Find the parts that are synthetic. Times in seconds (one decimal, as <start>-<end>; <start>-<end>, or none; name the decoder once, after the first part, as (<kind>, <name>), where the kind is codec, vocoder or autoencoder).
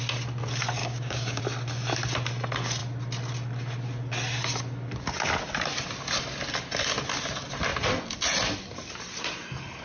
0.8-1.4 (codec, DAC)